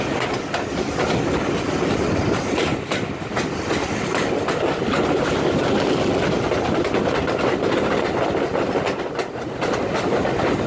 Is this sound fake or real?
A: real